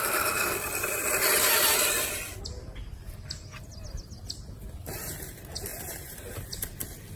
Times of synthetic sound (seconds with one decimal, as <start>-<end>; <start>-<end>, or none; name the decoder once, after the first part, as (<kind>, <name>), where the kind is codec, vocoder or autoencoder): 5.7-6.4 (vocoder, BigVGAN v2)